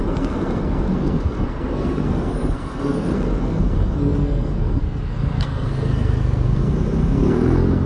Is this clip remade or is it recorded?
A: remade